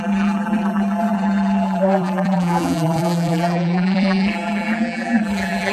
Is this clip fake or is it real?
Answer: fake